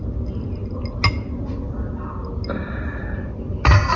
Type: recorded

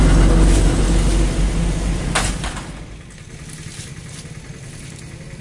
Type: recorded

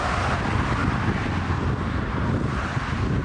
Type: recorded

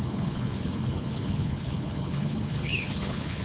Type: remade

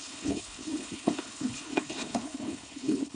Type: remade